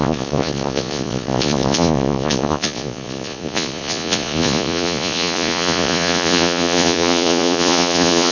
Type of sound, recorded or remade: remade